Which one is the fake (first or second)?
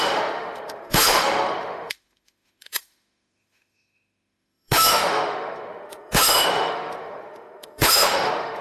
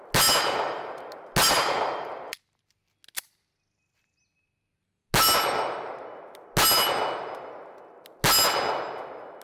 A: first